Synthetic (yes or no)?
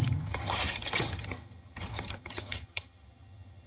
yes